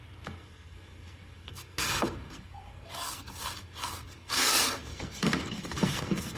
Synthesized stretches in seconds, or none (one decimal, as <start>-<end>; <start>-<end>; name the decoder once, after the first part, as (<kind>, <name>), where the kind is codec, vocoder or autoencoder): 0.0-6.4 (codec, SNAC)